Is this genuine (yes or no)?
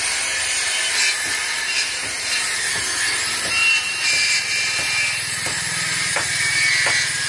no